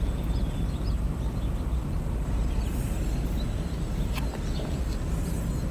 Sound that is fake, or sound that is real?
real